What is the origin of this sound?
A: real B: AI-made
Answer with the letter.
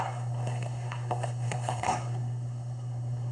B